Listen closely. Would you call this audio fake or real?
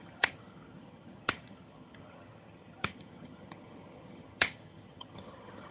fake